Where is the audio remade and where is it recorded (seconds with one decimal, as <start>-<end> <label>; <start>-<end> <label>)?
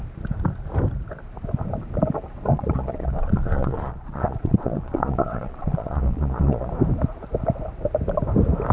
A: 0.0-2.5 recorded; 2.5-6.7 remade; 6.7-8.7 recorded